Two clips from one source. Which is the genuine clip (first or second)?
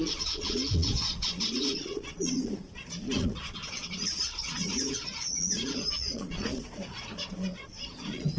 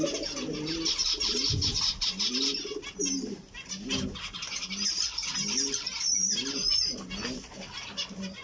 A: second